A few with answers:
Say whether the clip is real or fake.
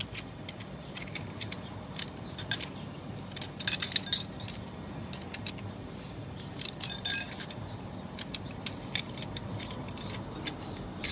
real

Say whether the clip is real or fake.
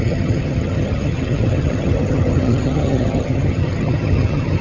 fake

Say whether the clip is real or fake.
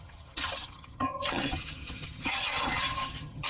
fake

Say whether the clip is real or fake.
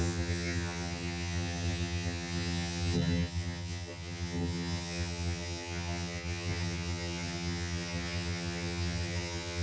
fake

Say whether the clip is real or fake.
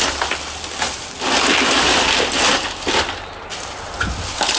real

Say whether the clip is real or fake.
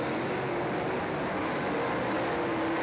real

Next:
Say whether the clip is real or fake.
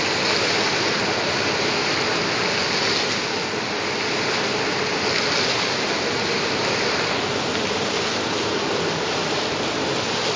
real